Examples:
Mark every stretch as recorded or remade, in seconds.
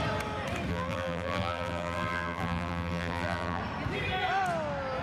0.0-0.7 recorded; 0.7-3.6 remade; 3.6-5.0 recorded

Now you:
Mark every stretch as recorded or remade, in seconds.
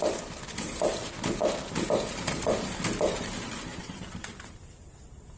0.0-3.7 recorded; 3.7-4.2 remade; 4.2-5.4 recorded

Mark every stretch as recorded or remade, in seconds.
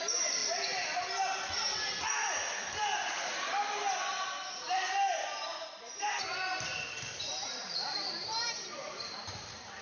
0.0-0.4 remade; 0.4-4.2 recorded; 4.2-9.8 remade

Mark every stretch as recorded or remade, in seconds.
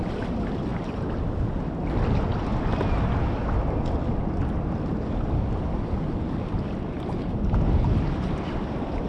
0.0-0.7 recorded; 0.7-1.4 remade; 1.4-9.1 recorded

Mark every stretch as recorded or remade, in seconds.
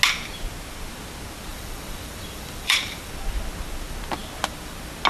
0.0-1.5 recorded; 1.5-3.1 remade; 3.1-5.1 recorded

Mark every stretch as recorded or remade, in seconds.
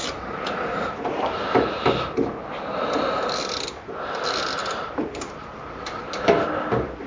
0.0-1.9 remade; 1.9-4.6 recorded; 4.6-6.5 remade; 6.5-7.1 recorded